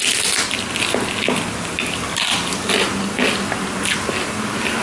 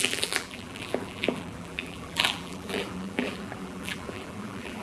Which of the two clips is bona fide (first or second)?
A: first